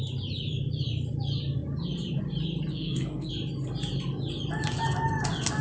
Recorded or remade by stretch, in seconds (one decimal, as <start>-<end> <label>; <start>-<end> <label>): 0.0-2.7 recorded; 2.7-3.3 remade; 3.3-5.6 recorded